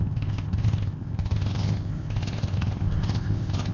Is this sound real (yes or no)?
no